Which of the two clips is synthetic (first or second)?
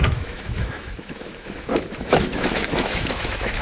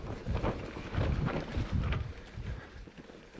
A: first